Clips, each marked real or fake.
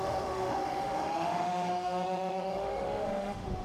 fake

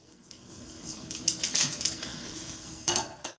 fake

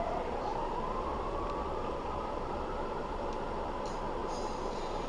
fake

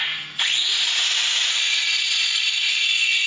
fake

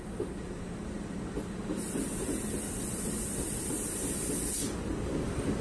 real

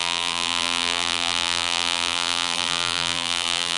fake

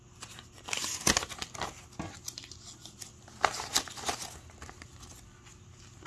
real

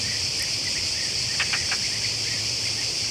fake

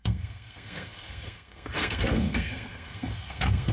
fake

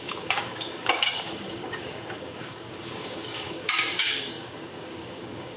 fake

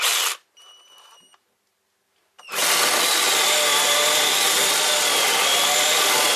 real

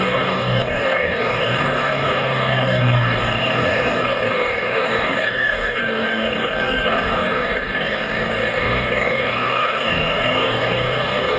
fake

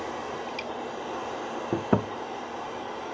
fake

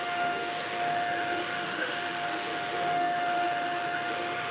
fake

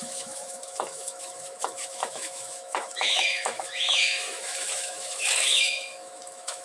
fake